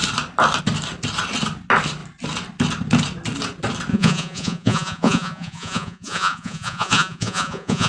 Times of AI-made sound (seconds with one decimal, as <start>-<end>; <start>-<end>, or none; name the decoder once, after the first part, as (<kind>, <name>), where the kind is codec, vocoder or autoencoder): 3.9-7.9 (vocoder, Vocos)